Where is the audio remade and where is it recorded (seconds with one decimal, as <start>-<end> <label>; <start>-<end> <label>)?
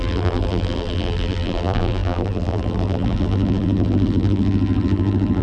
0.0-5.4 remade